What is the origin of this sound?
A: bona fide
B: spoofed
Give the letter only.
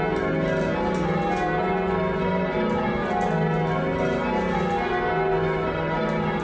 A